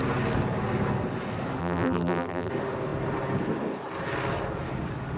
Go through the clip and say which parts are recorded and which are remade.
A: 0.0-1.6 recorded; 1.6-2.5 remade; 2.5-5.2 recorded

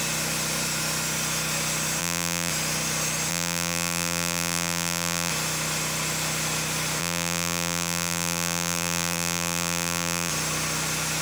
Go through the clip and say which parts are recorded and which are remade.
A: 0.0-2.0 recorded; 2.0-2.5 remade; 2.5-3.3 recorded; 3.3-5.3 remade; 5.3-7.0 recorded; 7.0-10.3 remade; 10.3-11.2 recorded

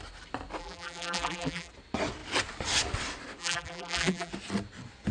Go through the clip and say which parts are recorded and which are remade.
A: 0.0-0.6 recorded; 0.6-1.7 remade; 1.7-3.4 recorded; 3.4-4.3 remade; 4.3-5.1 recorded

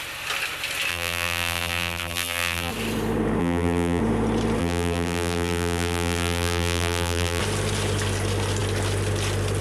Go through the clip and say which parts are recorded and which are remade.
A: 0.0-0.9 recorded; 0.9-2.7 remade; 2.7-3.4 recorded; 3.4-4.0 remade; 4.0-4.6 recorded; 4.6-7.4 remade; 7.4-9.6 recorded

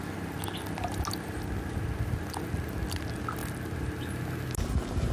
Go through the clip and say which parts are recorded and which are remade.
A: 0.0-5.1 recorded

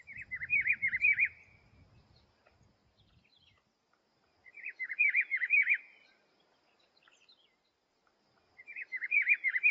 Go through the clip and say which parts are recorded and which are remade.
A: 0.0-9.7 remade

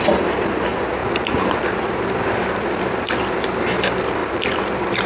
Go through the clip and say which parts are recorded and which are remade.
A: 0.0-1.0 recorded; 1.0-3.2 remade; 3.2-4.2 recorded; 4.2-5.1 remade

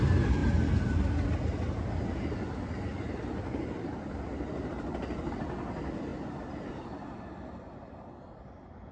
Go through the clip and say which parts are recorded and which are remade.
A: 0.0-8.9 recorded